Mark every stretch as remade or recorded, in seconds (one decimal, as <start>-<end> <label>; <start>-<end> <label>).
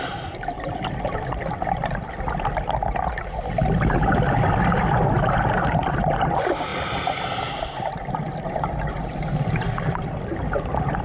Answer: 0.0-11.0 recorded